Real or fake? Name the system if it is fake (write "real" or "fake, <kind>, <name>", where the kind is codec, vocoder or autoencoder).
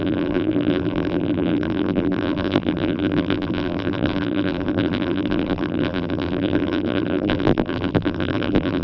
fake, vocoder, BigVGAN v2